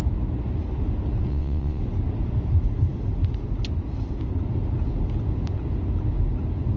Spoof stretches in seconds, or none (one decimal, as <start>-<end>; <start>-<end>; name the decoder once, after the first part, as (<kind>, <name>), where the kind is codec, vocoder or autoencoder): 1.3-1.8 (vocoder, WaveNeXt)